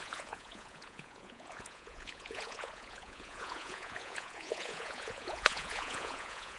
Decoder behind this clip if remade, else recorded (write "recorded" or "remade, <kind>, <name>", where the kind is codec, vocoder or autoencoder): remade, vocoder, Vocos